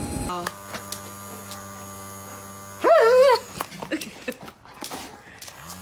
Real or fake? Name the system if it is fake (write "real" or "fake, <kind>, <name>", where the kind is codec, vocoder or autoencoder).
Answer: real